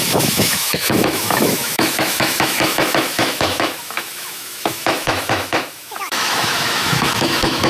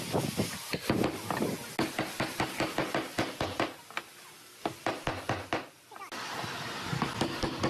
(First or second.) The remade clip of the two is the first